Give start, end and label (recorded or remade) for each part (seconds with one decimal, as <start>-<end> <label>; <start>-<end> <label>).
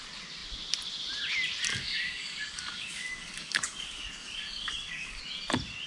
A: 0.0-1.7 recorded; 1.7-5.2 remade; 5.2-5.9 recorded